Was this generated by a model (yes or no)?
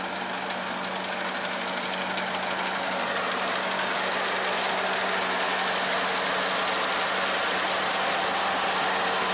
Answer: no